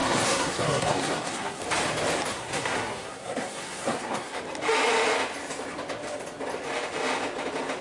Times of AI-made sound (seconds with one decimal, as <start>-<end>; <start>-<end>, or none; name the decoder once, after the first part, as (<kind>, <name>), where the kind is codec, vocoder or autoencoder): 0.0-1.6 (codec, SNAC); 2.3-4.4